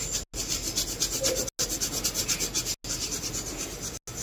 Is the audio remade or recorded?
recorded